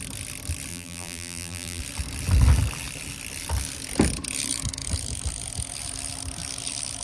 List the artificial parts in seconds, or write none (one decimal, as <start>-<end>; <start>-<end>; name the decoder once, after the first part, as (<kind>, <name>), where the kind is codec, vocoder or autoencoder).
0.7-1.8 (vocoder, BigVGAN v2)